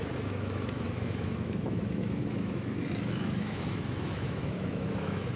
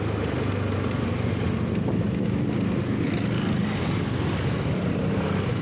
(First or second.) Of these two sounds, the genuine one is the second